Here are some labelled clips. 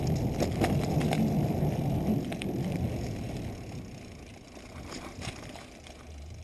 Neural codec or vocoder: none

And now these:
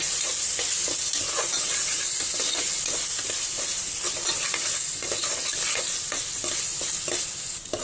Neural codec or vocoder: none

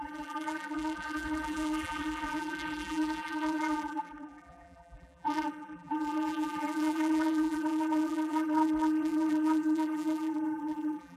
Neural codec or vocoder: vocoder, BigVGAN v2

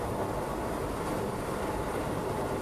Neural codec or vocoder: vocoder, BigVGAN v2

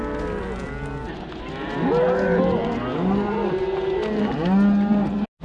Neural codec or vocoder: none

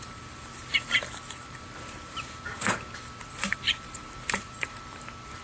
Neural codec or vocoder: vocoder, BigVGAN v2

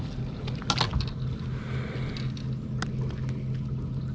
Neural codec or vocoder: none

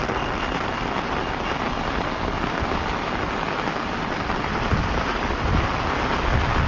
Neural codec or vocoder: none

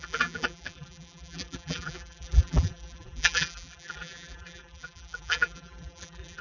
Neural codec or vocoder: vocoder, BigVGAN v2